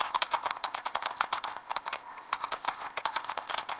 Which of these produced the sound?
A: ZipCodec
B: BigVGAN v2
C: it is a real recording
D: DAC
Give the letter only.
A